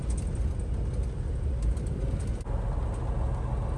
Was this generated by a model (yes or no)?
no